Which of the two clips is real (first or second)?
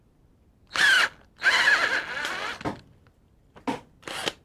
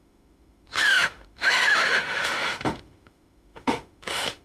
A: first